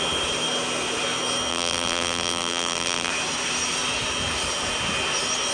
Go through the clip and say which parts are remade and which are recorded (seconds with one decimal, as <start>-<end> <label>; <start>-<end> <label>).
0.0-1.5 recorded; 1.5-3.1 remade; 3.1-5.5 recorded